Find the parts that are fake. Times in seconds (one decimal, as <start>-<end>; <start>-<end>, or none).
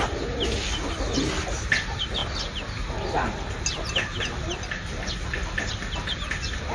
none